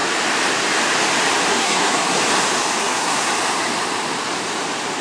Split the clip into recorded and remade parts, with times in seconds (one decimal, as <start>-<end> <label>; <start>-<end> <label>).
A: 0.0-1.5 recorded; 1.5-2.2 remade; 2.2-2.8 recorded; 2.8-3.3 remade; 3.3-5.0 recorded